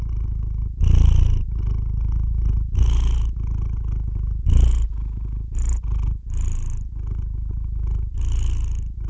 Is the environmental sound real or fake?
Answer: real